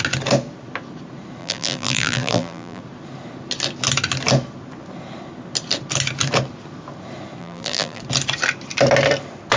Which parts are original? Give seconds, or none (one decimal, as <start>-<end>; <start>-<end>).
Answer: 0.0-1.4; 2.8-7.4; 8.0-9.6